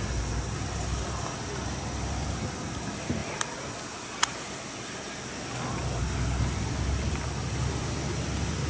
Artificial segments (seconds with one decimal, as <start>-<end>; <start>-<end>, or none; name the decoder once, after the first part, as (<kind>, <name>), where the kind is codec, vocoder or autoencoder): none